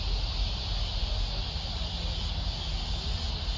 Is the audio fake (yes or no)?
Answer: no